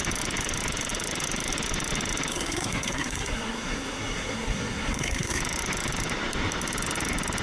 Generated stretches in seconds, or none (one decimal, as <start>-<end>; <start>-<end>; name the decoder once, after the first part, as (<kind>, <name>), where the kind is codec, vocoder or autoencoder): 2.3-5.4 (codec, SNAC)